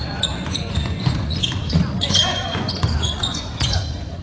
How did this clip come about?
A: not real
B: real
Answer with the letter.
A